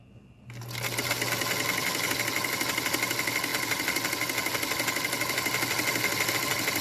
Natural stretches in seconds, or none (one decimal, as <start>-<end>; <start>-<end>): 0.0-6.8